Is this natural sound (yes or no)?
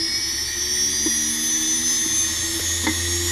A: yes